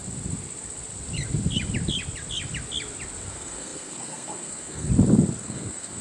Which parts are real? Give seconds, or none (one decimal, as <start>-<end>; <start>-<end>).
0.0-3.3; 4.9-5.4